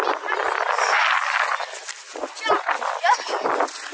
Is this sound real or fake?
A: real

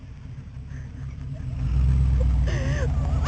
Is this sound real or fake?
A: real